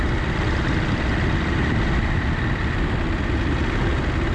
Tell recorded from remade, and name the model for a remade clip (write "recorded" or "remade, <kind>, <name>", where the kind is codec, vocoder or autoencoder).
recorded